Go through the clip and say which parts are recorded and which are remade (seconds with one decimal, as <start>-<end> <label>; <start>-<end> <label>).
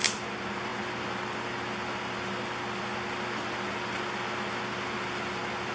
0.0-5.7 recorded